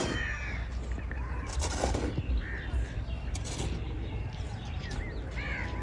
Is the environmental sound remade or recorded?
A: recorded